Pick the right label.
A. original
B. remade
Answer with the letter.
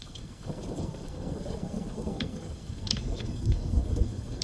B